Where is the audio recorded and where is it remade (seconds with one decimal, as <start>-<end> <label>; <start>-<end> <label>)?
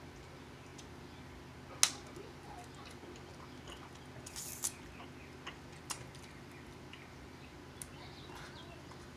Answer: 0.0-9.2 recorded